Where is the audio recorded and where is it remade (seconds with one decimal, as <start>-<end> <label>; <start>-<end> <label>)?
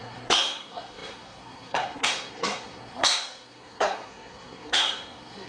0.0-5.5 remade